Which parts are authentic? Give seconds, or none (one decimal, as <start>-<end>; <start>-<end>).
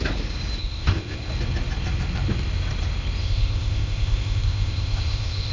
0.0-0.6; 1.3-3.2